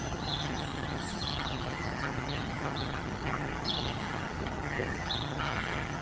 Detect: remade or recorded remade